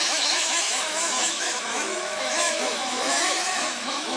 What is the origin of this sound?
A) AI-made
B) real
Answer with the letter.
A